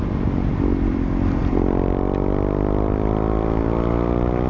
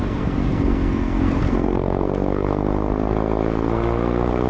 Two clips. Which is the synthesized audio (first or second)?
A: second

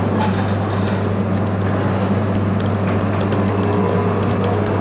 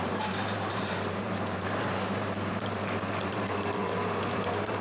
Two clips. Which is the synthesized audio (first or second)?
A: second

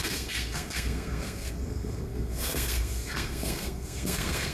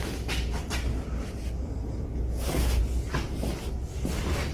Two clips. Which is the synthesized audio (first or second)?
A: first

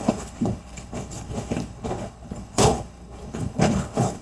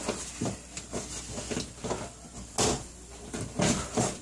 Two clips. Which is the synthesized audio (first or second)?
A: first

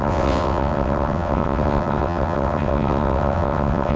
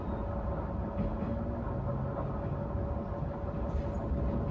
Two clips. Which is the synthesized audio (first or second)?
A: first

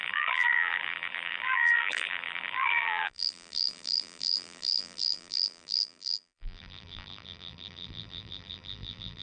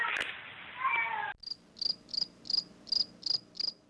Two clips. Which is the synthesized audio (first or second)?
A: first